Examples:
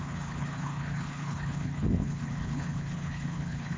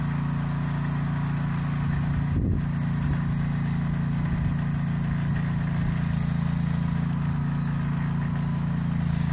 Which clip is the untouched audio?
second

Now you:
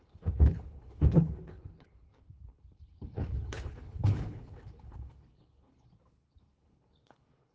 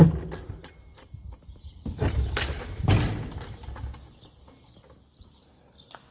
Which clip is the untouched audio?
second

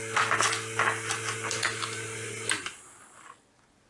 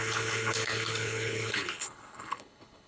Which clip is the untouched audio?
first